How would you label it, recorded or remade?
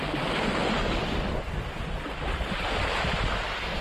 recorded